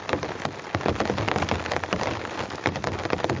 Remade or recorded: recorded